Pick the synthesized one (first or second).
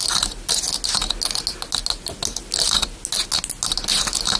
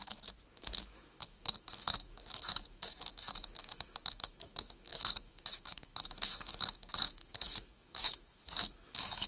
second